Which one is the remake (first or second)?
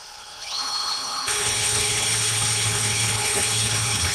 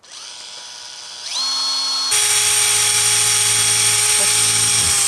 first